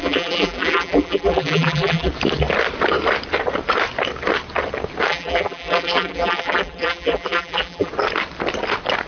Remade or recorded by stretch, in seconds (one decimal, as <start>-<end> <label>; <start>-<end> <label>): 0.0-2.1 remade; 2.1-5.1 recorded; 5.1-7.9 remade; 7.9-9.1 recorded